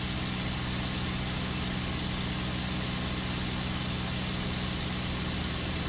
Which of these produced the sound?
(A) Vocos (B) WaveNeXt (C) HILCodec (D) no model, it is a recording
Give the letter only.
D